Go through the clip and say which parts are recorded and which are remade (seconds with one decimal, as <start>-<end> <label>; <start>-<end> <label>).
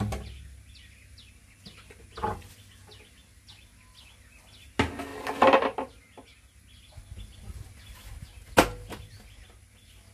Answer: 0.0-10.1 recorded